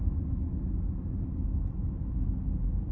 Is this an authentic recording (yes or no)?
yes